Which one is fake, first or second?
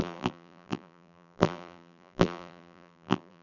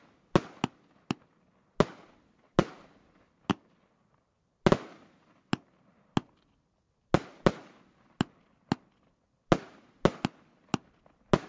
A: first